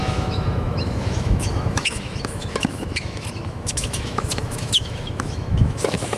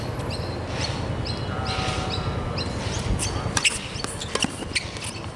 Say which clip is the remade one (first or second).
first